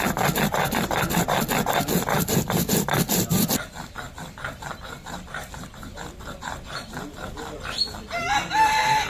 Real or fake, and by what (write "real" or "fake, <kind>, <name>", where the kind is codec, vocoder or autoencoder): fake, vocoder, BigVGAN v2